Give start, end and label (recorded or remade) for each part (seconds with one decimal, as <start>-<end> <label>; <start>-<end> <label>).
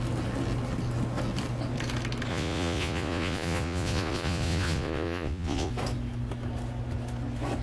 0.0-2.3 recorded; 2.3-5.7 remade; 5.7-7.6 recorded